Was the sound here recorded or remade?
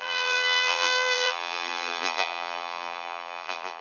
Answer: remade